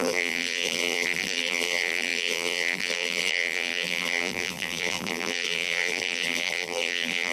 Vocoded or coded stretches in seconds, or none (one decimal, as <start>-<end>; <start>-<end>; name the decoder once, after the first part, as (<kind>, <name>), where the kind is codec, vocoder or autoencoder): 0.0-7.3 (vocoder, BigVGAN v2)